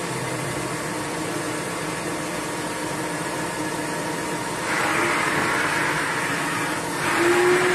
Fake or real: real